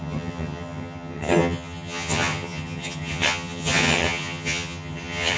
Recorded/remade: remade